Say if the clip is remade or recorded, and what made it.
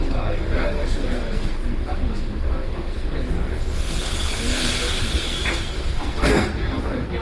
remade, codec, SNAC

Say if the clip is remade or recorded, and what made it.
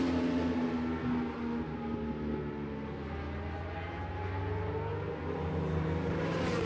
recorded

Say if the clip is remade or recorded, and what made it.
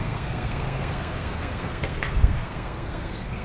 remade, codec, SNAC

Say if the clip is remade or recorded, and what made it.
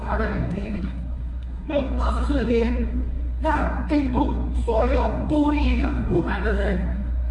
remade, codec, SNAC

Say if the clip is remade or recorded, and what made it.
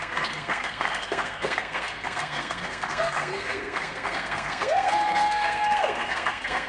remade, codec, SNAC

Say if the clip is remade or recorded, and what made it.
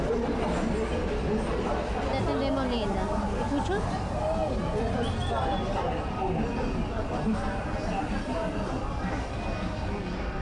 recorded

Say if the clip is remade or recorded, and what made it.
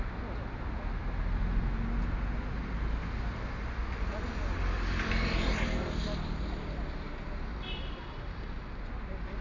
recorded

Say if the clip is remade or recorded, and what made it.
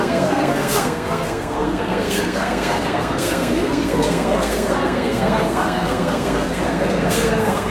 remade, codec, SNAC